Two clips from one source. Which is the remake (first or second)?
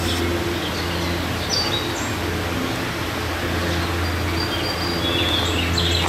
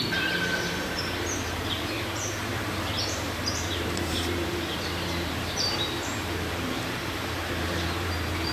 second